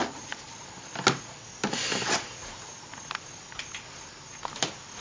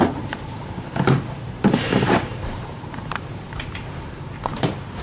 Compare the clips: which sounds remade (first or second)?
second